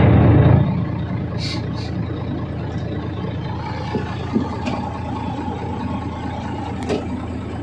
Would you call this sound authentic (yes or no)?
yes